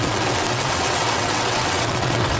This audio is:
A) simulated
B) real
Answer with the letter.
A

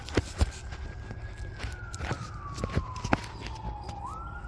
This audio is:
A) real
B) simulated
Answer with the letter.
A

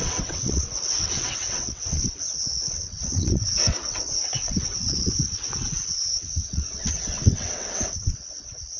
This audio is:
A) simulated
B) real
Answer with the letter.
A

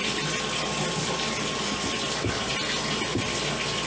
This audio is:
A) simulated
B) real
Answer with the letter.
B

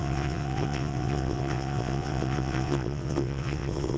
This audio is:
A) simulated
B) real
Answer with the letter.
A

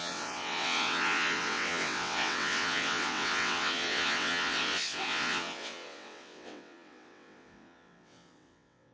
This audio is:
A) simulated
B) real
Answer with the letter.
A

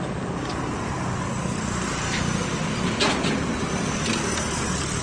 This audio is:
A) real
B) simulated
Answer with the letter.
A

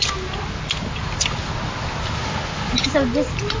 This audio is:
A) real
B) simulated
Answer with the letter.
A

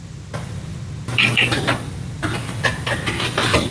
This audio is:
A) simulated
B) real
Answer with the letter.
B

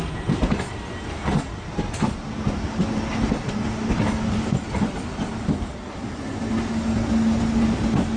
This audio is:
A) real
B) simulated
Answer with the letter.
A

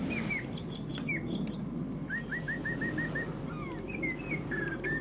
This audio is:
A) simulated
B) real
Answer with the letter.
B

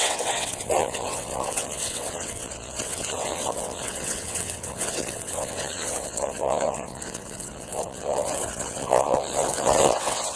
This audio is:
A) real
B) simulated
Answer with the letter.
B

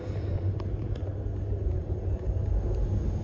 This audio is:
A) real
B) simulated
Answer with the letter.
A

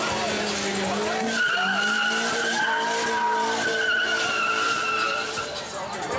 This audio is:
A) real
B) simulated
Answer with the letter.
A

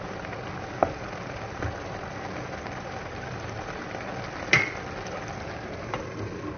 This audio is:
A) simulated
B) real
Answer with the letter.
B